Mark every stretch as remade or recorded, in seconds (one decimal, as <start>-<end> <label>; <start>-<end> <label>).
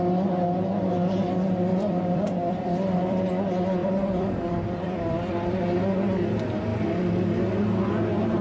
0.0-1.7 recorded; 1.7-3.2 remade; 3.2-3.8 recorded; 3.8-5.6 remade; 5.6-8.4 recorded